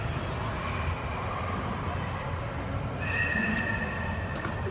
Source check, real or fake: real